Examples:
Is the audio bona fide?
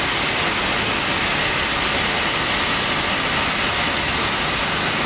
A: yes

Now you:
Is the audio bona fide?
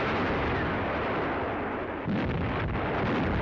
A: yes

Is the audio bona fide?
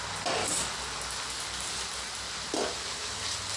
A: yes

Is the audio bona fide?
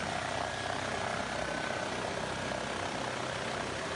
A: yes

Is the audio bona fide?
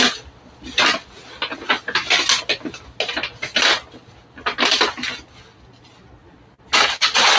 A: yes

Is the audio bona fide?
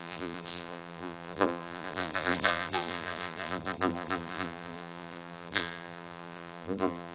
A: no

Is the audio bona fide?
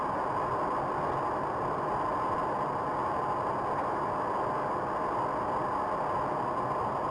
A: yes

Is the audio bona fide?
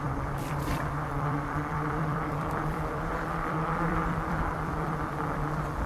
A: no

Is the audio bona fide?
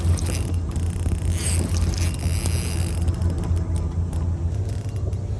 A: yes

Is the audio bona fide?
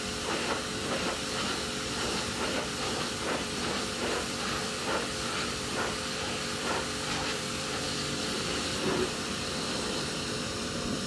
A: no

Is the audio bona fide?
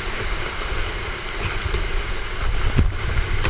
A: no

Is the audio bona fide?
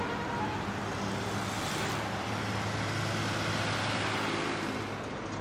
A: yes